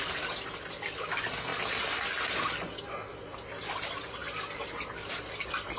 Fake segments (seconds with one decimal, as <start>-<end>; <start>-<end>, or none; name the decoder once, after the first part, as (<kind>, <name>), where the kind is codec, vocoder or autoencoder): none